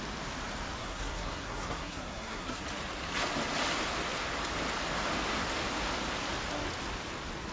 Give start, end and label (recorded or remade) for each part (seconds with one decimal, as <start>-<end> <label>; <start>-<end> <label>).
0.0-0.8 recorded; 0.8-2.6 remade; 2.6-7.5 recorded